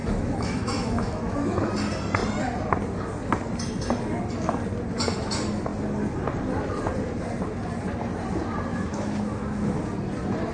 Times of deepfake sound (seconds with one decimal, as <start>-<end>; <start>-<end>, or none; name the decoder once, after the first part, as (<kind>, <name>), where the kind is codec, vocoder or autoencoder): 0.0-1.7 (autoencoder, DAC-VAE); 8.7-9.8